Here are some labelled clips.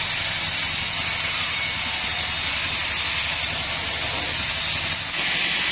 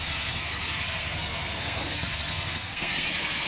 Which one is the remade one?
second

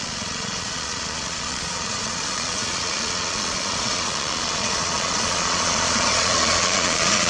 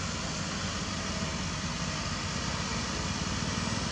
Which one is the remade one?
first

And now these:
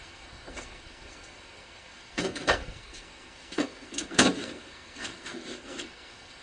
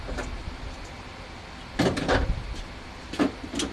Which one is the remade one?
first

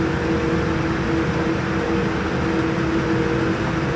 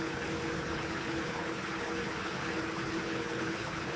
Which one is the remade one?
second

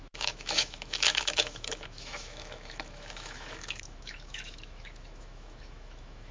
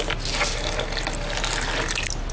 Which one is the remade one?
first